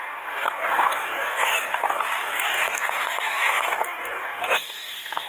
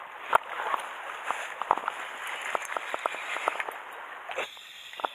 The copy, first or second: first